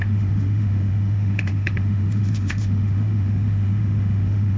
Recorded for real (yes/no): no